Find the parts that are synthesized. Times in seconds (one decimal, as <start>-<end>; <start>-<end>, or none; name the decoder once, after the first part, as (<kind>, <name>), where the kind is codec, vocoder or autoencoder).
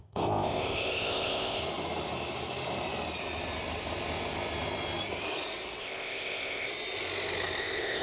0.0-1.6 (codec, ZipCodec); 5.8-6.7; 7.6-8.0